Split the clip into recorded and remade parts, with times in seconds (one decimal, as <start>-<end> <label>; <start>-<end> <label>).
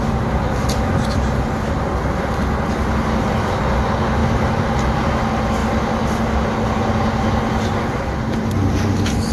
0.0-4.2 recorded; 4.2-5.1 remade; 5.1-9.3 recorded